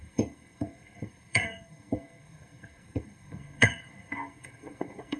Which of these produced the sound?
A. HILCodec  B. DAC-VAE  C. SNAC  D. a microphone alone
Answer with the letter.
C